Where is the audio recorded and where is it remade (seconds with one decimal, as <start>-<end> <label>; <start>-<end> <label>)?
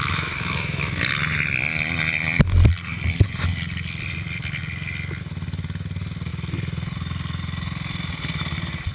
0.0-1.0 remade; 1.0-8.9 recorded